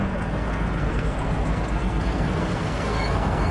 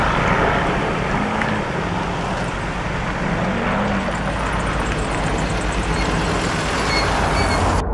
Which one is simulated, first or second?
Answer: first